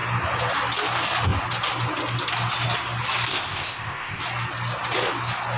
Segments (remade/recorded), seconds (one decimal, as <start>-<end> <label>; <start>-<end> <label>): 0.0-3.3 recorded; 3.3-4.2 remade; 4.2-5.6 recorded